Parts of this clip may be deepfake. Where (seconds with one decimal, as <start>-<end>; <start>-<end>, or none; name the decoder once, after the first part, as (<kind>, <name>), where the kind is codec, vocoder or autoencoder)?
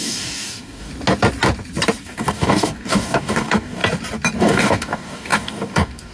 0.0-0.9 (codec, DAC); 2.0-3.8; 4.4-6.1